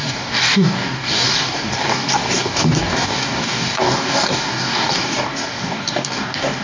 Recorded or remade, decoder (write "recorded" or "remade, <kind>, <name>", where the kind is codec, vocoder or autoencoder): remade, codec, DAC